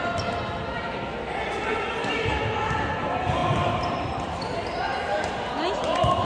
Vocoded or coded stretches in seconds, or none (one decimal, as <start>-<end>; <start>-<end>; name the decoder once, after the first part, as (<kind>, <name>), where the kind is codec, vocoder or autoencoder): 1.7-2.4 (vocoder, BigVGAN v2); 3.4-4.1